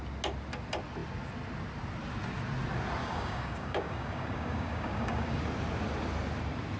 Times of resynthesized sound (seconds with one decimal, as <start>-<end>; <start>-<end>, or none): 3.0-5.4